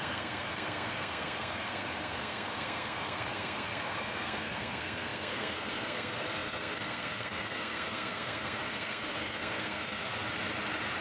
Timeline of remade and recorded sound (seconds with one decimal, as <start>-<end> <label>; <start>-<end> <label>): 0.0-10.1 remade; 10.1-11.0 recorded